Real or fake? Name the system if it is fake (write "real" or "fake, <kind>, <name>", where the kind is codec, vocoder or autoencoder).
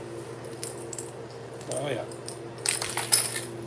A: real